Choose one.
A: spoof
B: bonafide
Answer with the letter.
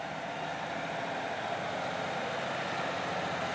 B